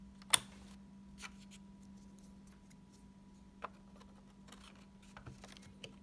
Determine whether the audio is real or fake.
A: real